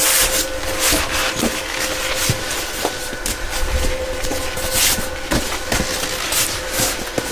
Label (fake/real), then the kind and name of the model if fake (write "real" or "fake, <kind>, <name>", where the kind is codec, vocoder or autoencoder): real